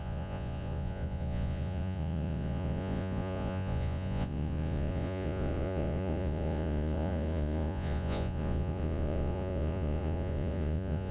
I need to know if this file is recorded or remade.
remade